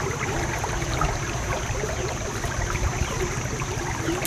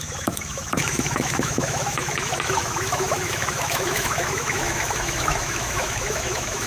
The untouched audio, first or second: first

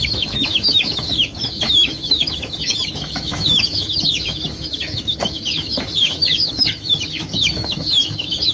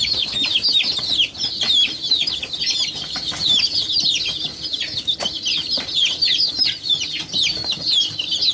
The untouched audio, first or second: second